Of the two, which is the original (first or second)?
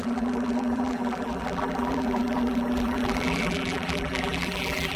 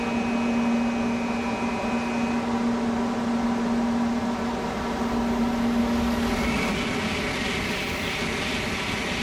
second